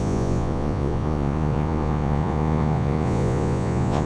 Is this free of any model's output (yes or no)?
no